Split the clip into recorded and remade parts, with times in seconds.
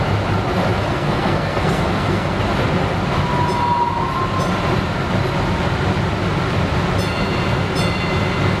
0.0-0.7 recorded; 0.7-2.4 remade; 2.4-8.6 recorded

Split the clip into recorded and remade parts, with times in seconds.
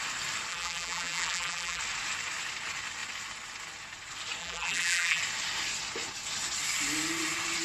0.0-0.5 recorded; 0.5-1.8 remade; 1.8-4.4 recorded; 4.4-5.2 remade; 5.2-7.6 recorded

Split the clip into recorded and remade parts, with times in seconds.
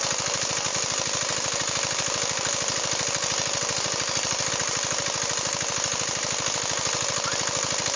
0.0-8.0 recorded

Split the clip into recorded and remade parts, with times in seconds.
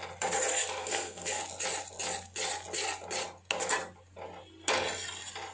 0.0-0.8 recorded; 0.8-1.4 remade; 1.4-5.5 recorded